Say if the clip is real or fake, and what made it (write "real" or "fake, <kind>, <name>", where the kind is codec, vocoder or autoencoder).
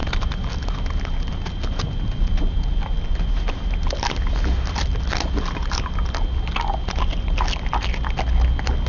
real